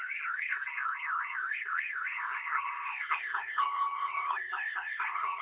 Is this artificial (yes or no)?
yes